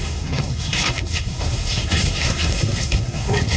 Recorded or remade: remade